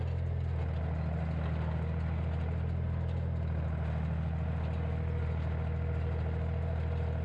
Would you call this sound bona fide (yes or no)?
yes